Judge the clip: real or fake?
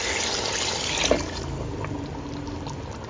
real